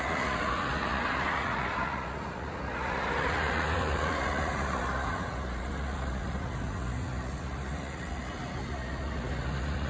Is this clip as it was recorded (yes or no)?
no